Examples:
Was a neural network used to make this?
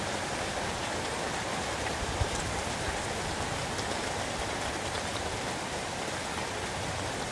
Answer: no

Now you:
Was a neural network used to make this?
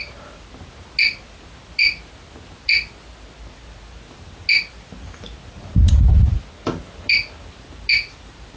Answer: no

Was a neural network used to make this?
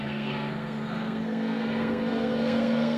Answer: yes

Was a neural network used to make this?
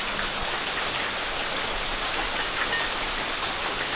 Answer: no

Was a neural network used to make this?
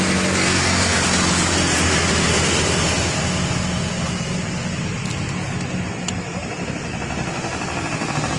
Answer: no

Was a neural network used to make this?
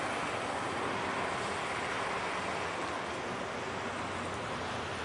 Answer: no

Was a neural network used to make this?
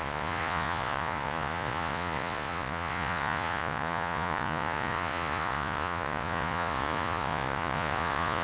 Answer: yes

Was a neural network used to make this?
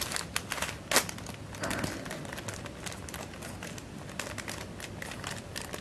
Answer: no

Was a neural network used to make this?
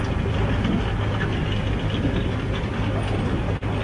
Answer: no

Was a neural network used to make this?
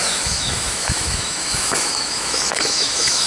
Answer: yes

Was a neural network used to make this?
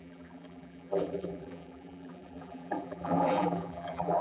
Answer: yes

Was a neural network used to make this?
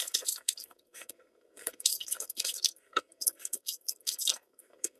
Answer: yes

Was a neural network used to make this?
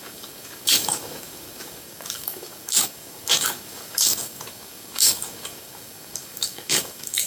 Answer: yes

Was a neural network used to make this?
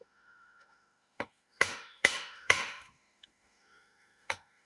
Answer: yes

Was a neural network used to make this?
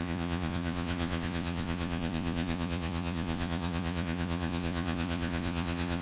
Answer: yes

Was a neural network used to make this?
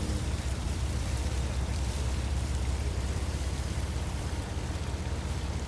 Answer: yes